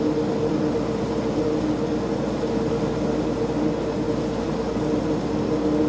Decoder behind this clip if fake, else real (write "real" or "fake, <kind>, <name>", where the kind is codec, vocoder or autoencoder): real